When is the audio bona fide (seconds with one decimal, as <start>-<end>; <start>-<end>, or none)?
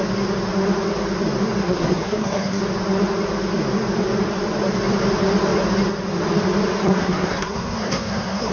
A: 0.0-1.6; 2.6-7.0